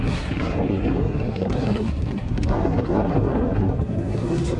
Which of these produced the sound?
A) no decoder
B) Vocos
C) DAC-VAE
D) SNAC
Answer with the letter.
D